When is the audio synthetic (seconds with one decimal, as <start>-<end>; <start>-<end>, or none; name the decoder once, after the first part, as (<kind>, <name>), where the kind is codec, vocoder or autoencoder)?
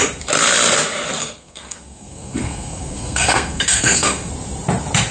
1.2-4.3 (codec, SNAC)